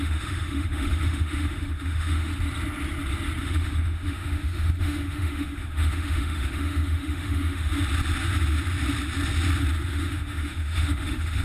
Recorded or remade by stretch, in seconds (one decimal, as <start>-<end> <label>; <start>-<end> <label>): 0.0-2.3 remade; 2.3-3.4 recorded; 3.4-7.7 remade; 7.7-9.9 recorded; 9.9-11.4 remade